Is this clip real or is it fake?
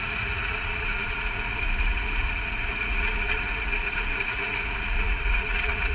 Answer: fake